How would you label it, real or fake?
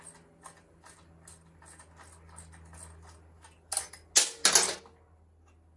real